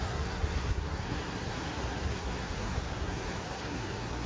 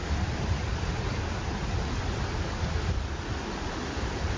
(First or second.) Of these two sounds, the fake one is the first